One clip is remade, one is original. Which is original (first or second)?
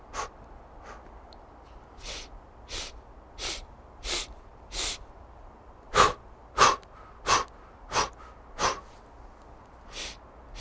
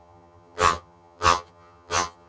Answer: first